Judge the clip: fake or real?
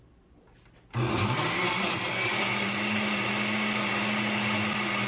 real